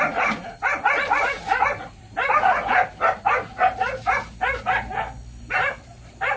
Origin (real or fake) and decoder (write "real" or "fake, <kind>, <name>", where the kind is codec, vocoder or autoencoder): real